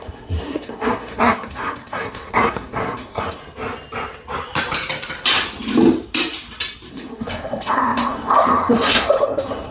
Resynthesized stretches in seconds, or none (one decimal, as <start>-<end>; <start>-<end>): 0.0-3.4; 6.9-9.7